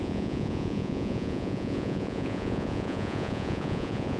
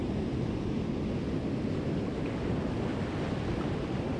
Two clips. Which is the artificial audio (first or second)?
first